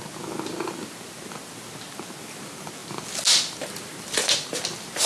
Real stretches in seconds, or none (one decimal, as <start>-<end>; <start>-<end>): 0.0-5.1

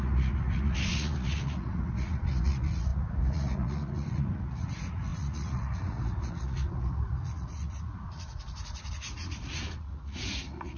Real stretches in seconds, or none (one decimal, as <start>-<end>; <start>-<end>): none

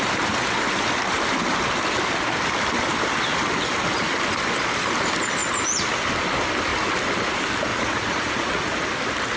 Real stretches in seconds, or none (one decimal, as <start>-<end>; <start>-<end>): 0.0-7.7; 8.8-9.4